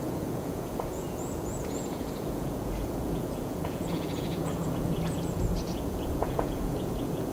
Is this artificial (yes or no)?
yes